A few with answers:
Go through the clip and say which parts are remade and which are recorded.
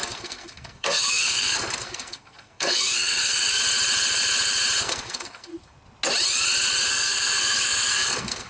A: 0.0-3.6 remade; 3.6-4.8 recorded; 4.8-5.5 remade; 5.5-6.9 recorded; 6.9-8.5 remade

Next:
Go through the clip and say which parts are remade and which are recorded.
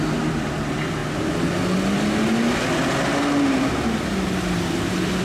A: 0.0-1.0 remade; 1.0-4.0 recorded; 4.0-5.2 remade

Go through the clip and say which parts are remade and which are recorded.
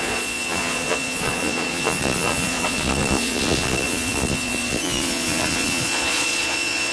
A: 0.0-6.9 remade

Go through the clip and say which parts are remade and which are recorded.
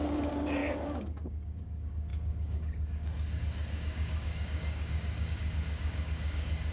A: 0.0-6.7 remade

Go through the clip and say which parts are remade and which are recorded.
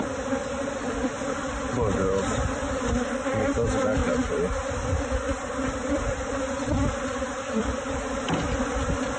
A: 0.0-4.0 remade; 4.0-5.0 recorded; 5.0-9.2 remade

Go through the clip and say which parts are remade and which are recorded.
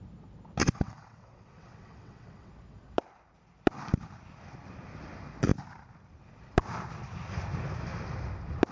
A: 0.0-0.6 recorded; 0.6-2.5 remade; 2.5-8.7 recorded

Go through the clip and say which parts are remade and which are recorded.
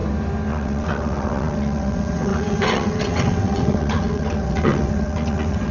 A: 0.0-0.5 recorded; 0.5-5.7 remade